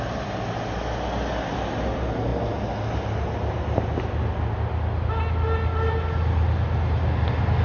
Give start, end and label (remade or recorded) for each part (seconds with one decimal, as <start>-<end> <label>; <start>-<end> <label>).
0.0-7.6 recorded